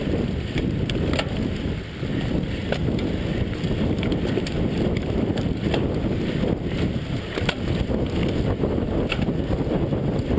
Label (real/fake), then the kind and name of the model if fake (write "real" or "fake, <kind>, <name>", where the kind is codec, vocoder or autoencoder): real